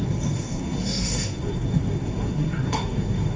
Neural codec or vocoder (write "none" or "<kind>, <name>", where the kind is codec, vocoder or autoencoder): codec, SNAC